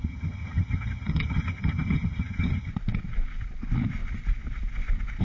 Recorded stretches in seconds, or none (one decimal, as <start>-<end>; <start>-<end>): 2.7-5.2